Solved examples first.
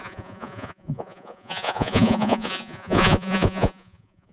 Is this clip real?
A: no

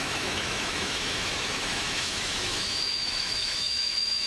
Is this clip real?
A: no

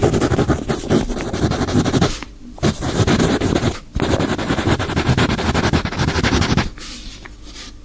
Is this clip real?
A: yes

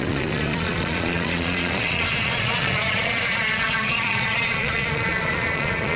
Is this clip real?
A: no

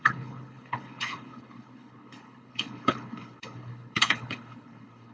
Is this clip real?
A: no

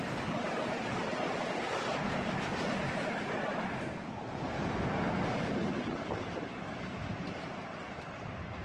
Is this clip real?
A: yes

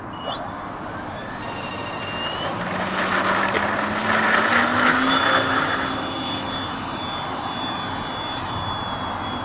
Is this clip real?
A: yes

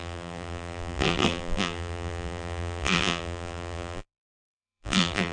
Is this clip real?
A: no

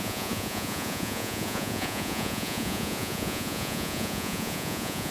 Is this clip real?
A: no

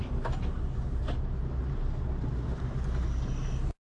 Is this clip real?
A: yes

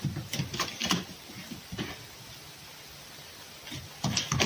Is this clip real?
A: yes